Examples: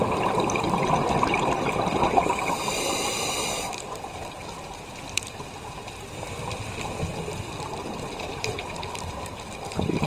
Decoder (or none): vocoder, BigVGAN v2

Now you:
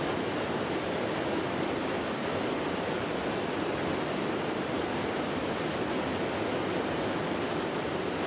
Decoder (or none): none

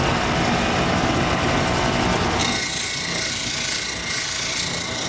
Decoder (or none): none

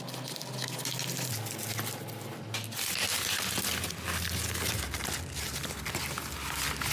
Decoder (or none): none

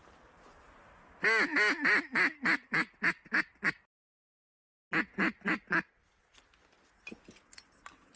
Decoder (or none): none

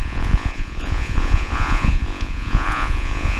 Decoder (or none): vocoder, Vocos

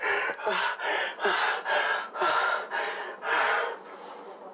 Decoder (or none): none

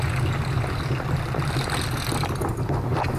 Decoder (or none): none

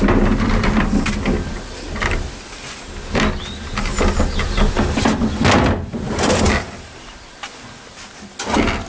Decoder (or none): none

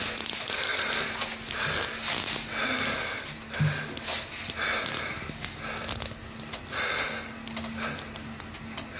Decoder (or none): none